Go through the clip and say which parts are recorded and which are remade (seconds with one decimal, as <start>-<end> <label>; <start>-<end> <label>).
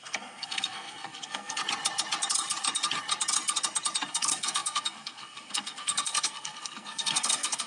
0.0-1.6 remade; 1.6-4.1 recorded; 4.1-7.7 remade